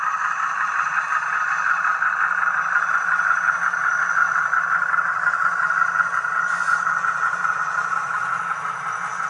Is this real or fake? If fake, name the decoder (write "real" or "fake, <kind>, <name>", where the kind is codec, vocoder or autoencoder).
real